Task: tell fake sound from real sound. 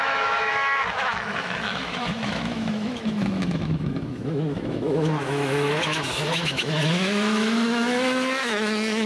fake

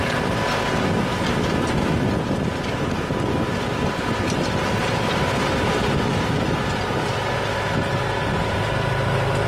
real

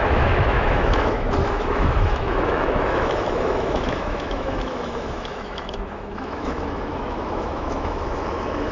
fake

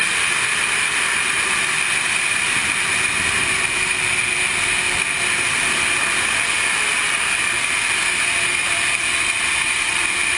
real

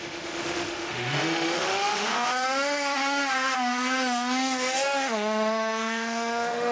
fake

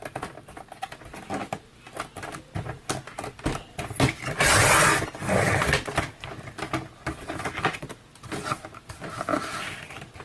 real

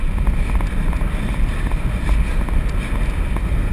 real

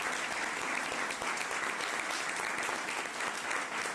real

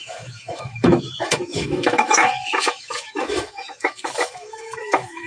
fake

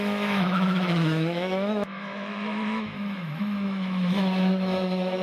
fake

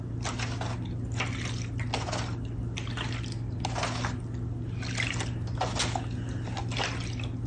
real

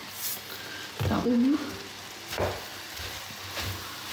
real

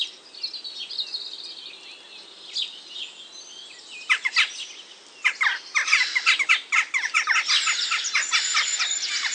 real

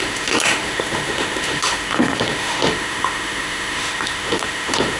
fake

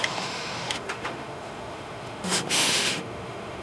fake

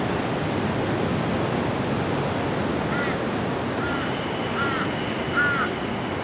real